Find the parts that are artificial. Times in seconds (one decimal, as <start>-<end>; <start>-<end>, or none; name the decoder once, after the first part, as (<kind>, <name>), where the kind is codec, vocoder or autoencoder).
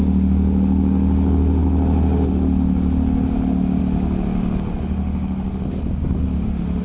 none